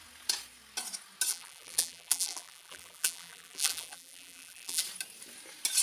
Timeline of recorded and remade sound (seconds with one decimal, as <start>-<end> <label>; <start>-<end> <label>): 0.0-1.3 recorded; 1.3-4.8 remade; 4.8-5.8 recorded